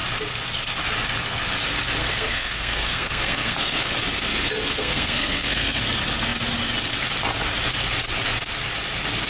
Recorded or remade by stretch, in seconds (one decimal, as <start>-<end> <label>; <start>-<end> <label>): 0.0-2.0 recorded; 2.0-3.9 remade; 3.9-4.8 recorded; 4.8-5.8 remade; 5.8-9.3 recorded